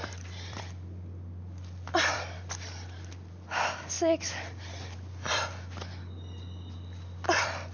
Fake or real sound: fake